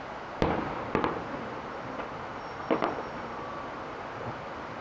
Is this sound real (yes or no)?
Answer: yes